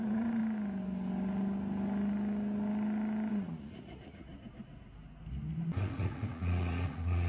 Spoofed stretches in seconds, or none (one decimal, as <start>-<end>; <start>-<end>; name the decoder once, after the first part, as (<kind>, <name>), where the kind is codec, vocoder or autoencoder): 0.0-0.4 (vocoder, Vocos); 3.3-4.3; 5.8-7.3